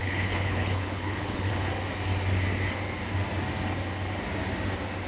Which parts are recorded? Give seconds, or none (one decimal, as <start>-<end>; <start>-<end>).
1.5-5.1